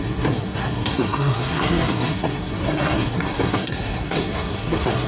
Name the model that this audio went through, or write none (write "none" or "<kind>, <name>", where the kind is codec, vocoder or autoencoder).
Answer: codec, SNAC